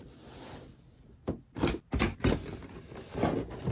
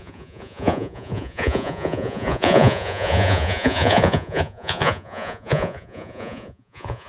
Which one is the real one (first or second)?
first